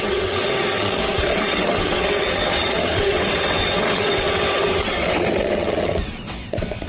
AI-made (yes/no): yes